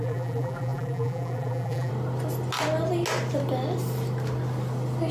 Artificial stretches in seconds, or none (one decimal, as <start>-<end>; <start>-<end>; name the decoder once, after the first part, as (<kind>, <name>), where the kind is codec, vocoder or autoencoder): 0.0-1.9 (vocoder, BigVGAN v2)